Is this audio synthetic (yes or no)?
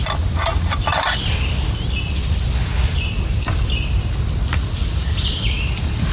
no